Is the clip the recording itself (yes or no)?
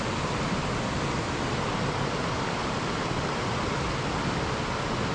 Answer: yes